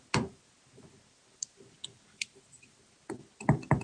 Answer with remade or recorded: recorded